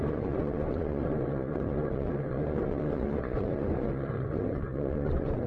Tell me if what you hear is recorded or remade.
remade